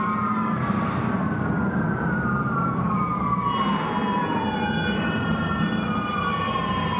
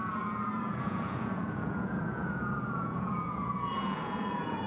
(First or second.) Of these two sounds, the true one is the first